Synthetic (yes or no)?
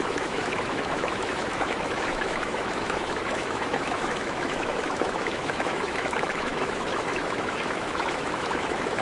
yes